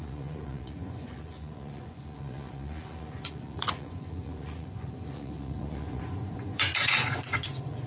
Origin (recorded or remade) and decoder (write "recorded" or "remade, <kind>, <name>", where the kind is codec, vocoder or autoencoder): remade, vocoder, Vocos